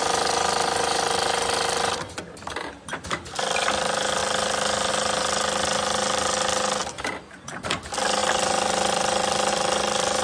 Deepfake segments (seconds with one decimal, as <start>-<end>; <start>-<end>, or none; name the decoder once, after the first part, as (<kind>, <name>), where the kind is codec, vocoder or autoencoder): none